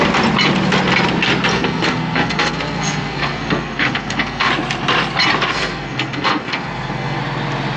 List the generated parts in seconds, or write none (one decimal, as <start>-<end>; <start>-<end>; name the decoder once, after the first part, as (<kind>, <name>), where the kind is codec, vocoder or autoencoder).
1.5-4.5 (codec, SNAC); 5.5-7.2